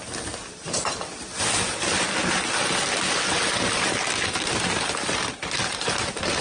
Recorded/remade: recorded